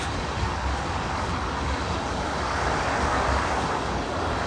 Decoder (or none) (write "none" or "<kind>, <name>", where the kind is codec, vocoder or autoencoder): codec, DAC